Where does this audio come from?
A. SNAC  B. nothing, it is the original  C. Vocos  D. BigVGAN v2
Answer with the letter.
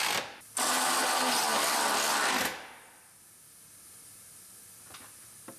B